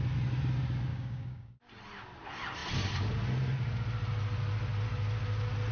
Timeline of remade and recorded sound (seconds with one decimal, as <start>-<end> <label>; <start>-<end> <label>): 0.0-0.9 recorded; 0.9-1.5 remade; 1.5-5.7 recorded

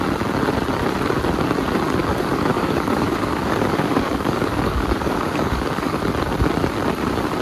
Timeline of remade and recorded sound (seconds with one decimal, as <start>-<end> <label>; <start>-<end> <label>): 0.0-2.0 recorded; 2.0-6.0 remade; 6.0-7.4 recorded

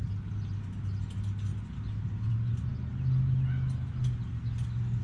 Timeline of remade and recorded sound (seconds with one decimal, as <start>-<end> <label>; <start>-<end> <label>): 0.0-5.0 recorded

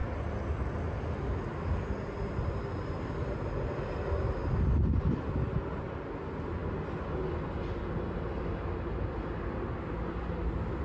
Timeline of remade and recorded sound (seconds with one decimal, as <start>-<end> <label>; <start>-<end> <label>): 0.0-10.8 recorded

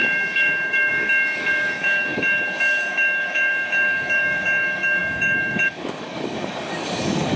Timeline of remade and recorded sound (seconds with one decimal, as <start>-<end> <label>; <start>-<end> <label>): 0.0-7.4 remade